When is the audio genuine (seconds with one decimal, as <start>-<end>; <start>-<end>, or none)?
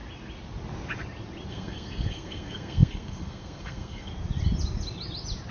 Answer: 0.0-1.5; 4.1-5.5